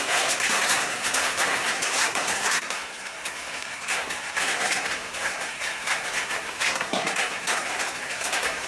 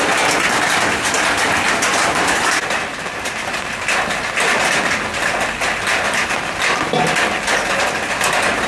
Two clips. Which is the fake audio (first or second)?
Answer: first